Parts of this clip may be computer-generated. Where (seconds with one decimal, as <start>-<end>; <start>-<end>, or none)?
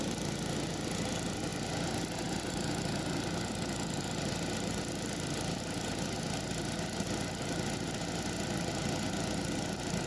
none